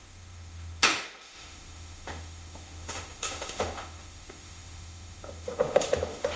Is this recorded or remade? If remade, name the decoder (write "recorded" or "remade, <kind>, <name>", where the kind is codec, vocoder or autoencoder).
remade, autoencoder, DAC-VAE